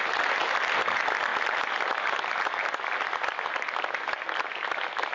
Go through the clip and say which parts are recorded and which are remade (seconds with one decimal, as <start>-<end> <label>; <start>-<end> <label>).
0.0-5.1 recorded